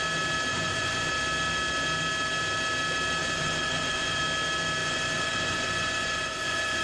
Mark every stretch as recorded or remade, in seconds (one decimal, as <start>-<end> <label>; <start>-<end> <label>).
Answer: 0.0-0.5 recorded; 0.5-1.1 remade; 1.1-3.2 recorded; 3.2-4.2 remade; 4.2-4.8 recorded; 4.8-6.8 remade